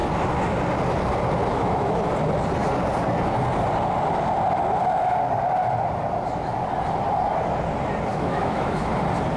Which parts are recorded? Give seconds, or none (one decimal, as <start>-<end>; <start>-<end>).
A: 0.0-1.5; 2.0-8.1; 8.9-9.4